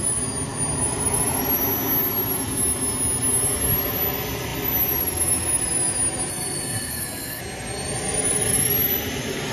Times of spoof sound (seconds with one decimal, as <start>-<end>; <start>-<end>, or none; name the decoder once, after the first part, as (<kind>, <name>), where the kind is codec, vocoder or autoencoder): 6.3-7.4 (codec, SNAC)